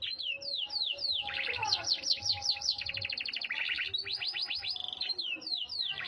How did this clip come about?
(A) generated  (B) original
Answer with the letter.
B